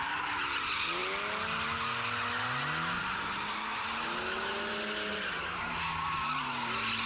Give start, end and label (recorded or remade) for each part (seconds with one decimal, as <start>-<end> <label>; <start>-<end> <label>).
0.0-7.1 recorded